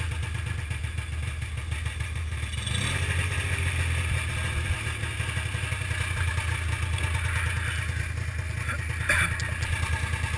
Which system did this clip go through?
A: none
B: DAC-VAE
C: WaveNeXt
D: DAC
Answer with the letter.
A